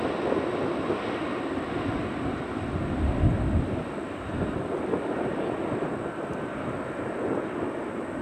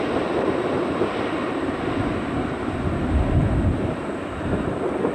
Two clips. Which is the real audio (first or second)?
first